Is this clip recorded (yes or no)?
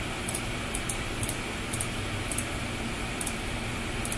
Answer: yes